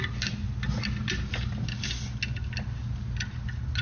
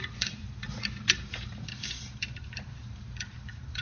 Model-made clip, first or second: second